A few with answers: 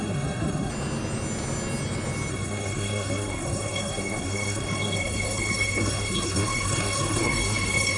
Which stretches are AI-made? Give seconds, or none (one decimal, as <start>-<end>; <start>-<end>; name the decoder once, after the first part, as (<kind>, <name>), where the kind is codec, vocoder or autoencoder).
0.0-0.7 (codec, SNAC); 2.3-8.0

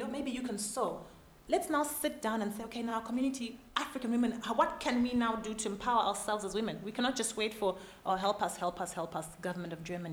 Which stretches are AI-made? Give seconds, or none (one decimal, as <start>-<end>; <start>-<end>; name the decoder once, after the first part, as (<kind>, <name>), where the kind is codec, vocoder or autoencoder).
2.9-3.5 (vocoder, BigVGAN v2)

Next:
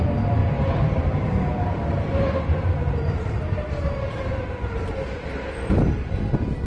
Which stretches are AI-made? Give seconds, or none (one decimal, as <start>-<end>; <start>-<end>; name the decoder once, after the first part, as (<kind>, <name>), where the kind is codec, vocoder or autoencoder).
0.4-4.3 (vocoder, BigVGAN v2)

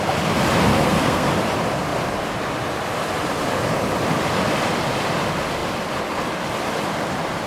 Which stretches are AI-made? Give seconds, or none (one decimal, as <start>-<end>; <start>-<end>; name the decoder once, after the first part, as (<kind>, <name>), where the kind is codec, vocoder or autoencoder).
0.7-1.3 (codec, SNAC)

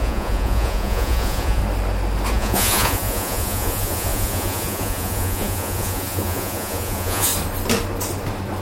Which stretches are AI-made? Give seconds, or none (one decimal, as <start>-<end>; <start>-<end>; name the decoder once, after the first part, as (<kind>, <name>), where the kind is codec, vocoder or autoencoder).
0.0-1.6 (vocoder, Vocos); 2.3-7.3